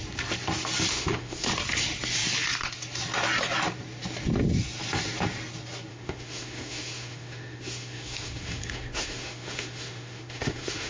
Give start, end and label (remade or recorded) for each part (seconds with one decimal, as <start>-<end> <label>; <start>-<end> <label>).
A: 0.0-0.9 recorded; 0.9-1.5 remade; 1.5-5.9 recorded; 5.9-10.9 remade